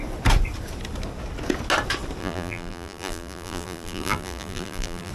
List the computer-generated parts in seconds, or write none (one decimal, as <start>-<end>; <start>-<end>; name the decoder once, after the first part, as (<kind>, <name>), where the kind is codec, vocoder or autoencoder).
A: 2.2-5.1 (vocoder, BigVGAN v2)